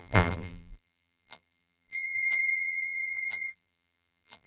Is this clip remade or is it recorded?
remade